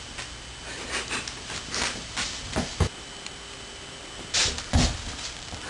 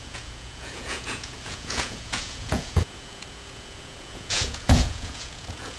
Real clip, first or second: first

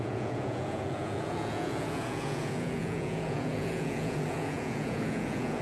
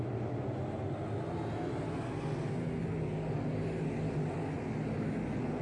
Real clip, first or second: second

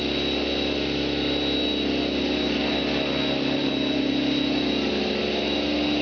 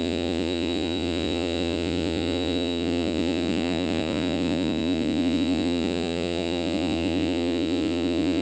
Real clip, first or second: first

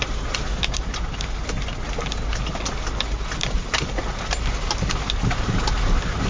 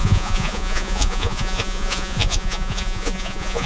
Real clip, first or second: first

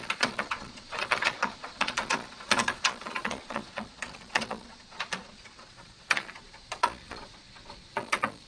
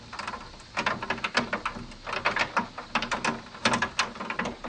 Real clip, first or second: second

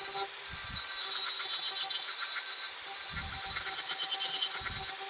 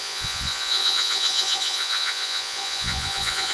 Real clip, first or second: first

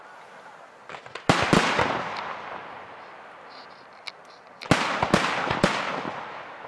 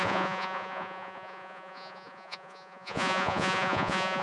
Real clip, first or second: first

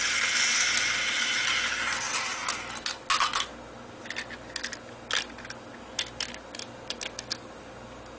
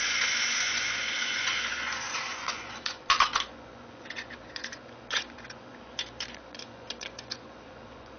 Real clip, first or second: first